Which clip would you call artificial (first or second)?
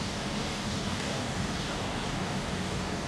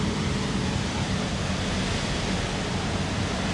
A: first